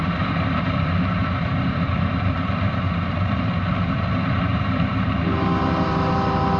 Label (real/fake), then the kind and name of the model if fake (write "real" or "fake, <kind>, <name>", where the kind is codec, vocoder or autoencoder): fake, vocoder, BigVGAN v2